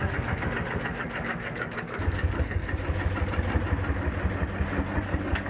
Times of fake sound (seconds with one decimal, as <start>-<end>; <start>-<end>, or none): 0.0-2.6; 5.0-5.5